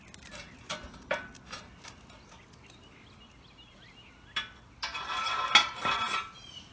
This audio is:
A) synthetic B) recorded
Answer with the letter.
B